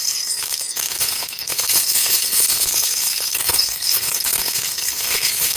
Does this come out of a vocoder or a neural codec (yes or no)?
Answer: yes